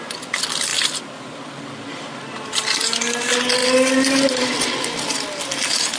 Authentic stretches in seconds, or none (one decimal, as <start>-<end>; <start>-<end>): 0.0-6.0